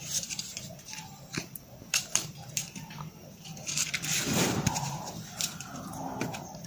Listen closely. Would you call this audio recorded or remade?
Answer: remade